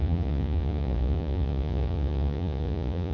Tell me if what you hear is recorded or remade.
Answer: remade